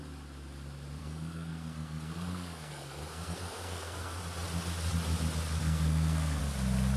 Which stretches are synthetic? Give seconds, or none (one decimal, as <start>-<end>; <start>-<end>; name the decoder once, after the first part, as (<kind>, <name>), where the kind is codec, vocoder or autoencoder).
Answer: 1.0-4.2 (codec, SNAC); 5.6-6.4